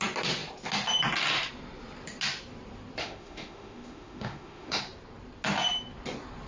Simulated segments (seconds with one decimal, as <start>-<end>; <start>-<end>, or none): 3.0-4.8